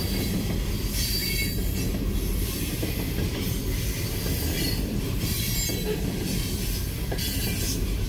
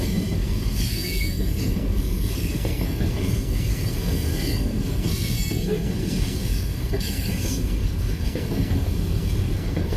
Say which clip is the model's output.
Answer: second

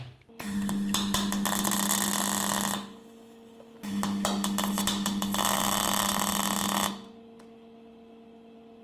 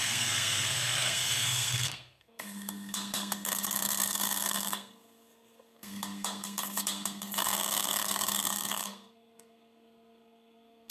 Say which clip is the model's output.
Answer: second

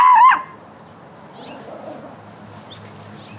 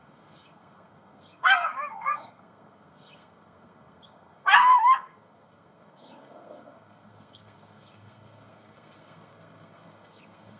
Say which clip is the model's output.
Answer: second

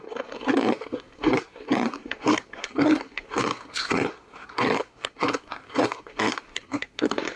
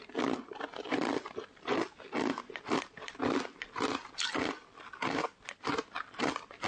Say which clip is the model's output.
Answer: first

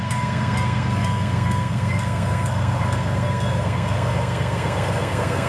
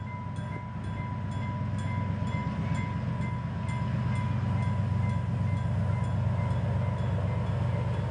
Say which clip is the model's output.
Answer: first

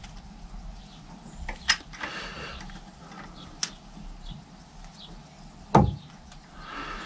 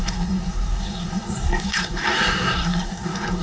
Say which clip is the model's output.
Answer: second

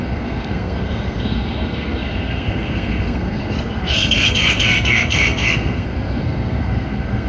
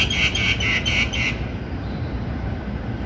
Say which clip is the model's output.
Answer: first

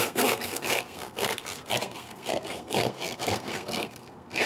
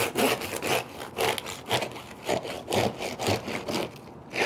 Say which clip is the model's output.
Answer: first